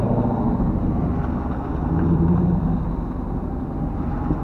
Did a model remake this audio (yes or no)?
no